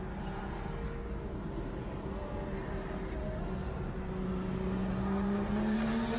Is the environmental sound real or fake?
real